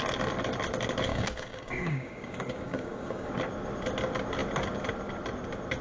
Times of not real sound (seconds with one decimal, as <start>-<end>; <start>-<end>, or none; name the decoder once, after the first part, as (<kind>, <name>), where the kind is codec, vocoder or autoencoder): 1.1-3.3 (codec, DAC)

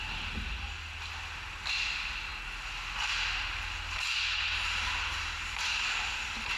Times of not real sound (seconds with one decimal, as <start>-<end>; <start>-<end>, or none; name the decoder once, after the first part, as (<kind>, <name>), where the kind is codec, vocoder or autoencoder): none

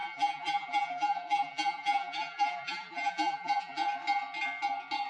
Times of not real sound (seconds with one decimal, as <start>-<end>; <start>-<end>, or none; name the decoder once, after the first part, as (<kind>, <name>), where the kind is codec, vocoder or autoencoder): 0.0-3.8 (vocoder, BigVGAN v2)

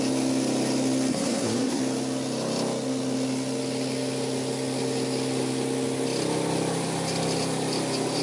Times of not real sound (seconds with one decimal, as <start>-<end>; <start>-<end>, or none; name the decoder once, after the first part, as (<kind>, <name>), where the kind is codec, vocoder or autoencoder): 1.1-1.8 (codec, SNAC)

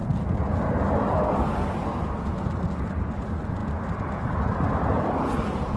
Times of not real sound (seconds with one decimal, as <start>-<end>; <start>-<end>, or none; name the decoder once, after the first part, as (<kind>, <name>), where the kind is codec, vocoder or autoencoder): none